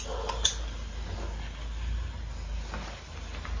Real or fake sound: real